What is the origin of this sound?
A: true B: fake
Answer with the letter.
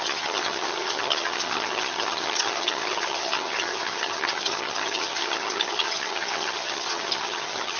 B